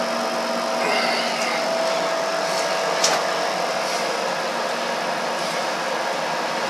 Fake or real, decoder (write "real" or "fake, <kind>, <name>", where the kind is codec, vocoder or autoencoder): real